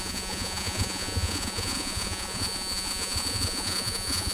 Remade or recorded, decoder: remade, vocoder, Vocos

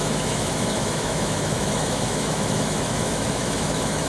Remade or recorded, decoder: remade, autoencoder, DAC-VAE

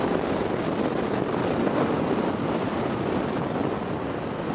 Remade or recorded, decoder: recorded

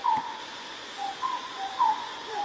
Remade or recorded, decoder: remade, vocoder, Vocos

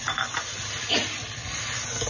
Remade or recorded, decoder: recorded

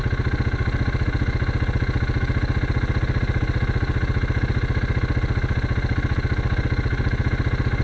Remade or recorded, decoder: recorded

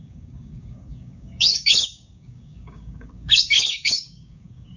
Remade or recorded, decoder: remade, codec, DAC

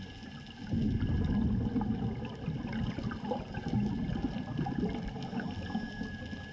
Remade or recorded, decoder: recorded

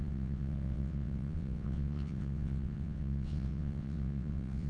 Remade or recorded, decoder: remade, vocoder, WaveNeXt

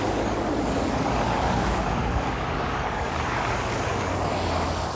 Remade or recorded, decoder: remade, codec, DAC